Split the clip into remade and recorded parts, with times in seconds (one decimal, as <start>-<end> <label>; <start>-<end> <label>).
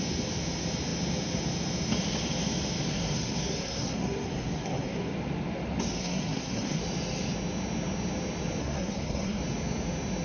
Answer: 0.0-2.8 recorded; 2.8-5.1 remade; 5.1-6.0 recorded; 6.0-6.8 remade; 6.8-8.6 recorded; 8.6-9.4 remade; 9.4-10.2 recorded